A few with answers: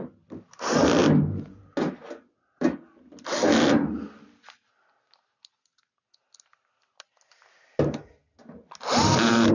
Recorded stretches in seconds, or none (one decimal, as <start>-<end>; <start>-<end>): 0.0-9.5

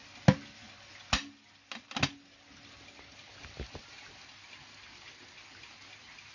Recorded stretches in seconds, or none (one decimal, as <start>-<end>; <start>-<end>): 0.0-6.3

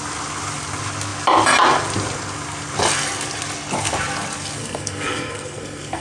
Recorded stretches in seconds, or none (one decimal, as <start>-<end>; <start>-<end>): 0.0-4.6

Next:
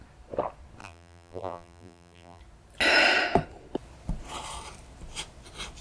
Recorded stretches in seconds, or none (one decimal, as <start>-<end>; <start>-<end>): 0.0-0.8; 2.4-5.8

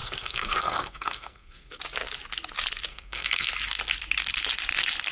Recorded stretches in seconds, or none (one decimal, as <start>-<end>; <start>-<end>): 1.8-2.9; 3.5-5.1

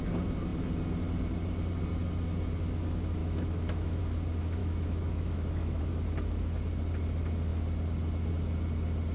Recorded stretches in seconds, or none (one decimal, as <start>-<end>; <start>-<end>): 0.0-3.2; 4.0-4.6; 5.8-9.1